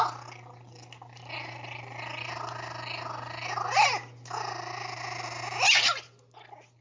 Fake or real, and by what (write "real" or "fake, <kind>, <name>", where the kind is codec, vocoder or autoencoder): real